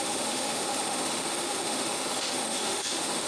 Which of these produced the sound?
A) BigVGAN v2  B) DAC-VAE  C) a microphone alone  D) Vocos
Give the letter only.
B